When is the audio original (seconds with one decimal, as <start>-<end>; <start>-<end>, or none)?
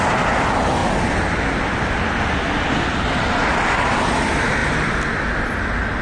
0.0-6.0